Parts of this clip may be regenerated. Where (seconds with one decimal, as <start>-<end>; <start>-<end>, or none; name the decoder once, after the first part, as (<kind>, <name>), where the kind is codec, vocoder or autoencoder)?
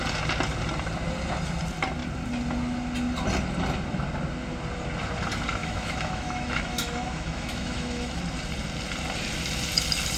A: 5.6-8.2 (autoencoder, DAC-VAE)